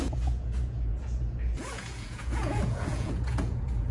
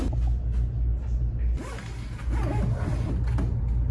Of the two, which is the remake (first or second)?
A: first